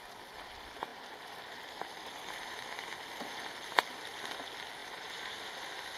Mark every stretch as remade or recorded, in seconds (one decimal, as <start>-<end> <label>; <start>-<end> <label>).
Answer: 0.0-4.8 recorded; 4.8-5.4 remade; 5.4-6.0 recorded